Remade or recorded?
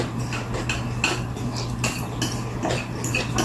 recorded